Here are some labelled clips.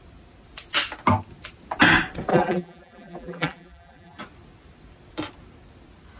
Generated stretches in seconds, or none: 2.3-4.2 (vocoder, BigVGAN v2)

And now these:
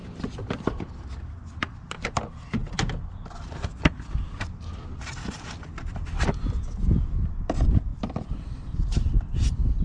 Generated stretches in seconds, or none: 7.9-8.6 (vocoder, BigVGAN v2)

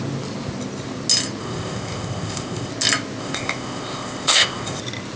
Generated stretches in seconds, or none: 1.4-2.7 (codec, ZipCodec); 3.2-4.8